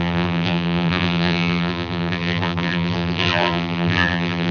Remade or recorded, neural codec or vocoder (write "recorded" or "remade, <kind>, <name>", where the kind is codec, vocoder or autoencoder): remade, vocoder, BigVGAN v2